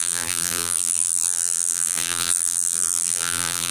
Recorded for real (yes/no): no